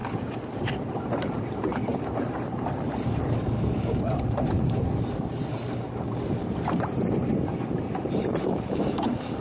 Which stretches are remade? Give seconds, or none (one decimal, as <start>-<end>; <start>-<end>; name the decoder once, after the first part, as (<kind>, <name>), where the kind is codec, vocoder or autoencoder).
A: 0.0-9.4 (vocoder, BigVGAN v2)